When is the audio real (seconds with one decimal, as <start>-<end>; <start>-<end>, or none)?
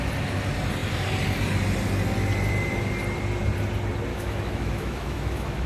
0.0-4.1